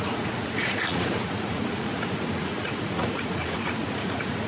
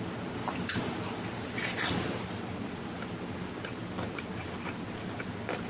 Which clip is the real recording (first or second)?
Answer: second